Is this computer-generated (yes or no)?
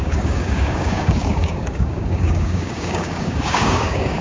yes